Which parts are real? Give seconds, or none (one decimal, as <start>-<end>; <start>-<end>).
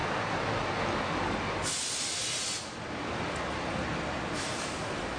0.0-5.2